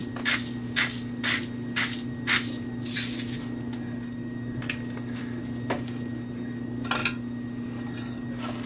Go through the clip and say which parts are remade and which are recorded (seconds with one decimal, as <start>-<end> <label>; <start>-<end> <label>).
0.0-8.7 recorded